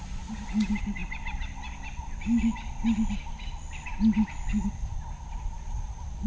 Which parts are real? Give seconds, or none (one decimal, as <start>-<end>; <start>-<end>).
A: 0.0-6.3